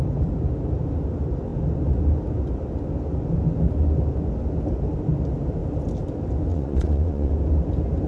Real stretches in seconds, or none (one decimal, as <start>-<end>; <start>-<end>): 0.0-6.5; 7.3-8.1